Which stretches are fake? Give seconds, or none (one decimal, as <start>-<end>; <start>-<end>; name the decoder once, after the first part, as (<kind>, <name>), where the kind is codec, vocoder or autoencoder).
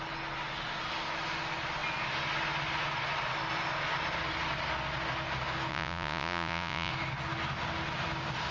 5.7-6.9 (vocoder, Vocos)